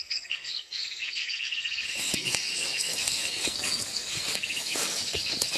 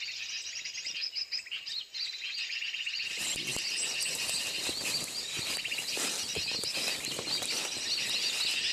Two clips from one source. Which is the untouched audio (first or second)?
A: second